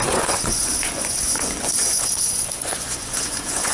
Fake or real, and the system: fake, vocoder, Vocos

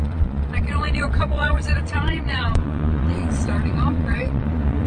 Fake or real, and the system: fake, vocoder, Vocos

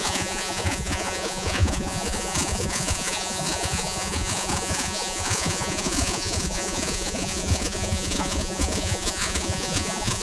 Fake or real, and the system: fake, vocoder, Vocos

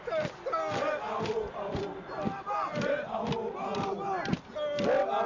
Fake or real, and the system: real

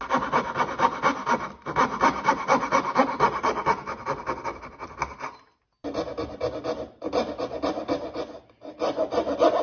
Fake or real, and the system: real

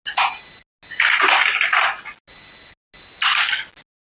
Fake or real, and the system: real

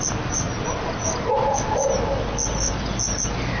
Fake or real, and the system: real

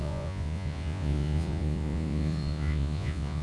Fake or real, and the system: fake, vocoder, Vocos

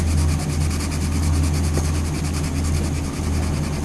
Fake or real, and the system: real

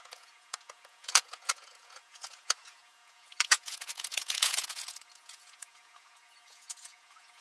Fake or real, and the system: fake, vocoder, Vocos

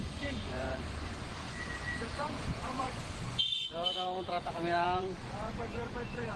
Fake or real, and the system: fake, vocoder, Vocos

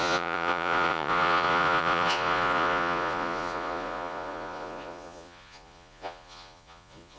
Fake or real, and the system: fake, vocoder, Vocos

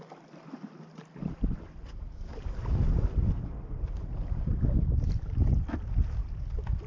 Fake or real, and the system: real